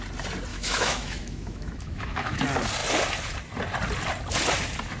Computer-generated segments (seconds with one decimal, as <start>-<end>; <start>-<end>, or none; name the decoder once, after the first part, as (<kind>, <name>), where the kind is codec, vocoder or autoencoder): 0.5-2.4 (autoencoder, DAC-VAE)